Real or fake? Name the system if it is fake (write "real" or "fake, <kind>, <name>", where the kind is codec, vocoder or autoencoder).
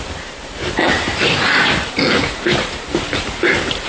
real